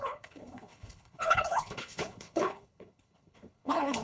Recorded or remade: remade